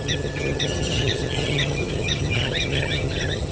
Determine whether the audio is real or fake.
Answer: fake